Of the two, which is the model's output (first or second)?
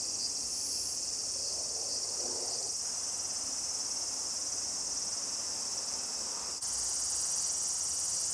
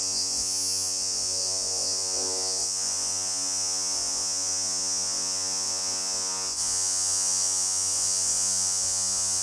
second